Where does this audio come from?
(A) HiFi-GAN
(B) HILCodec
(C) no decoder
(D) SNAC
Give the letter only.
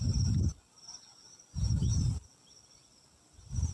C